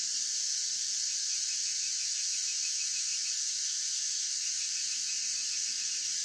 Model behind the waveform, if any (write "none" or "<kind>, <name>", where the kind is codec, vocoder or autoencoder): autoencoder, DAC-VAE